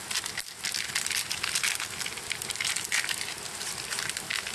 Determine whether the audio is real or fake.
real